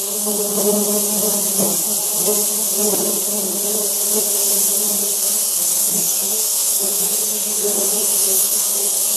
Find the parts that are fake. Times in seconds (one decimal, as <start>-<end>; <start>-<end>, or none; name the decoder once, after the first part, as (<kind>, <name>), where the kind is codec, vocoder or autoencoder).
0.0-0.4 (codec, SNAC); 5.2-9.2